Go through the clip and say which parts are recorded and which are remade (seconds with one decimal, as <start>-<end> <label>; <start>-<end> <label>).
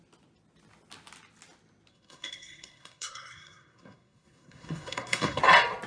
0.0-1.9 recorded; 1.9-5.4 remade; 5.4-5.9 recorded